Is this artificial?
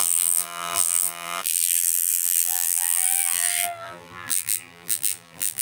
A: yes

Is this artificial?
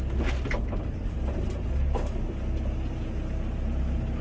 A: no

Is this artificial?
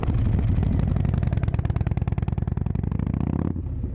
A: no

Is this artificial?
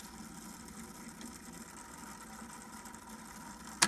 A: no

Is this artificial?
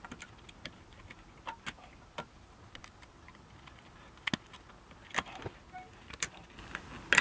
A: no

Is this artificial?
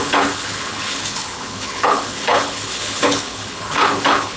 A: yes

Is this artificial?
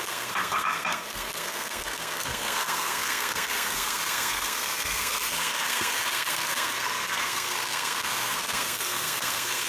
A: yes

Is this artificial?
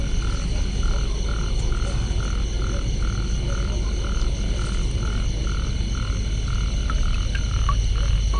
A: no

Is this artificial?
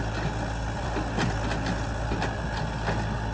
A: no